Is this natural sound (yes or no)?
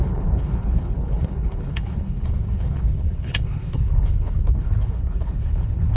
no